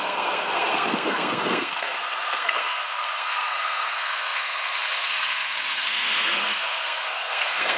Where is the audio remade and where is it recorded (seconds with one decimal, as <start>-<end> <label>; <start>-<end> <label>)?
0.0-7.8 remade